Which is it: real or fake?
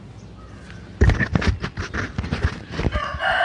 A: real